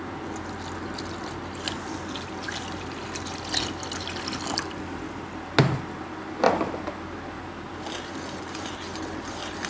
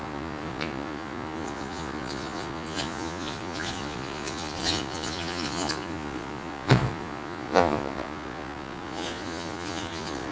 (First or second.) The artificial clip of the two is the second